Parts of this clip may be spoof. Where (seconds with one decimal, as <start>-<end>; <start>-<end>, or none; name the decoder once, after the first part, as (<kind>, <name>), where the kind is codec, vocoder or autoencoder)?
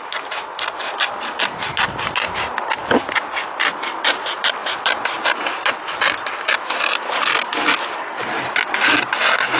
none